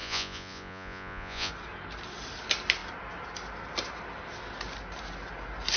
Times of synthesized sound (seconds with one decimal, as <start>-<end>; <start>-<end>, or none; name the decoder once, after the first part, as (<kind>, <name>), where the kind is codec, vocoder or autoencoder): 0.0-1.5 (vocoder, Vocos)